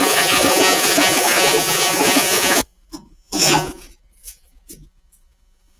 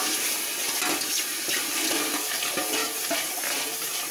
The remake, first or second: first